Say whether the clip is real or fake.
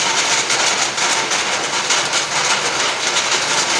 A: real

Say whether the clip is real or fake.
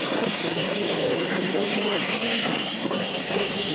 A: fake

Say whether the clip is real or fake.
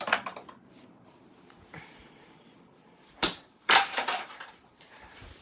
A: fake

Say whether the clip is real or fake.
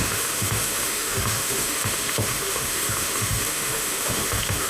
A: fake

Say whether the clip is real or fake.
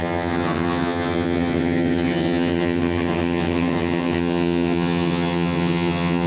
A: fake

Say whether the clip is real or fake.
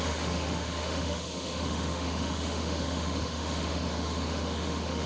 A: fake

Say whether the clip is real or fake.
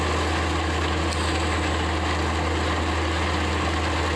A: real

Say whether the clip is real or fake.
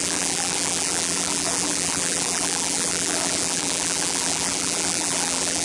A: fake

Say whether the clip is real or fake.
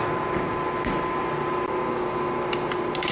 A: real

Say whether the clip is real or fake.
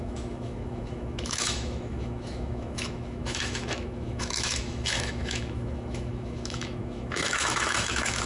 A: fake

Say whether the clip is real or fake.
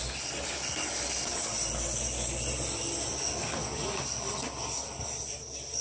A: real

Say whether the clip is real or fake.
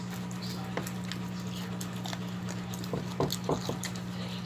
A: real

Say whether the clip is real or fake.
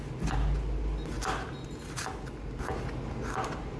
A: real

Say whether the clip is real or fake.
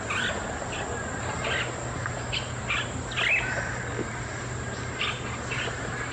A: real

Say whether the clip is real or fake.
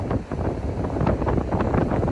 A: real